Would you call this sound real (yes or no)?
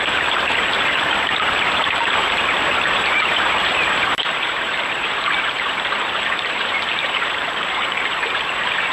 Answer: no